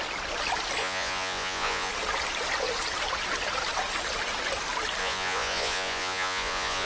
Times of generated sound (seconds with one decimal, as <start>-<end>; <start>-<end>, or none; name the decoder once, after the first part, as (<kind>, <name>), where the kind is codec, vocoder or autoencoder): 0.8-1.9 (vocoder, Vocos); 5.0-6.9